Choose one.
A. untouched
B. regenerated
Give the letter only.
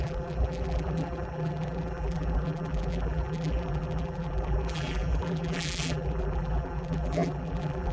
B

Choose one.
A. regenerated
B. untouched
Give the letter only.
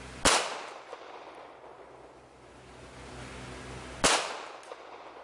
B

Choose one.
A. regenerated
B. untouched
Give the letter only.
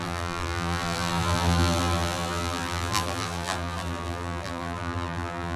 A